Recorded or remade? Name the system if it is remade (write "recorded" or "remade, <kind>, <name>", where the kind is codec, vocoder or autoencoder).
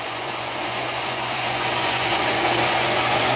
remade, vocoder, Vocos